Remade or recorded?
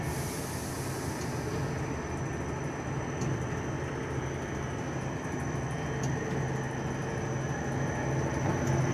recorded